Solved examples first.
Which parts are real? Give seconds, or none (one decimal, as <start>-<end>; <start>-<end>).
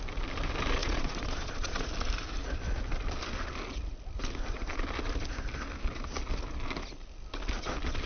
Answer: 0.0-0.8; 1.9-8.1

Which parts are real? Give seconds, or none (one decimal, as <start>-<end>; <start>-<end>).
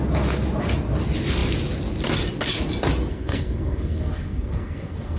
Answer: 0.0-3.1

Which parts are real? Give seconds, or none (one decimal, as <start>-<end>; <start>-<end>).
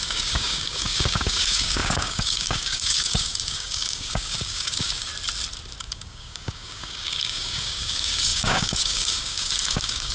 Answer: 5.1-5.8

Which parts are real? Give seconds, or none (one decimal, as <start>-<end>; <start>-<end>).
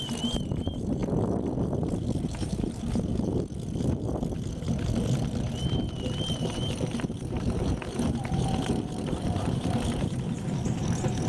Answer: 1.0-2.3; 3.1-6.3